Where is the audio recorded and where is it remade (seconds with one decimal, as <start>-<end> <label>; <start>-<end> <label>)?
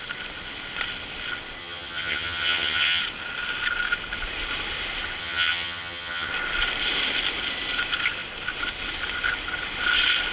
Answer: 0.0-1.6 recorded; 1.6-3.0 remade; 3.0-5.2 recorded; 5.2-6.3 remade; 6.3-10.3 recorded